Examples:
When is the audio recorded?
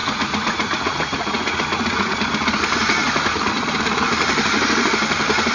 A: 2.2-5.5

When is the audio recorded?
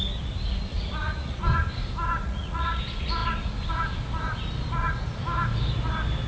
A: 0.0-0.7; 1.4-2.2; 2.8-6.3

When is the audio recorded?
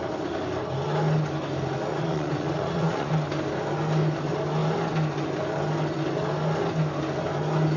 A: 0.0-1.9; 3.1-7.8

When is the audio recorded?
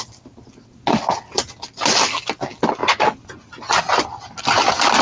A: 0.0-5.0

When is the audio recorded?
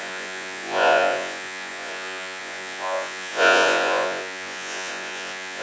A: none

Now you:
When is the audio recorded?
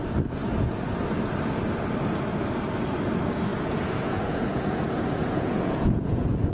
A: 0.0-3.5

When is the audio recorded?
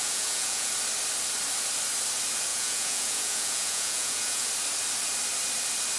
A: 0.7-2.5; 4.5-6.0